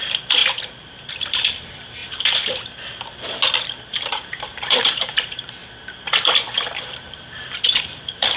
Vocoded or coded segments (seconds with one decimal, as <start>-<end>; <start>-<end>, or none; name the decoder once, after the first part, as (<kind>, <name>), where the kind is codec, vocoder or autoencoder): 0.0-2.0 (vocoder, BigVGAN v2); 3.6-5.6; 6.8-8.4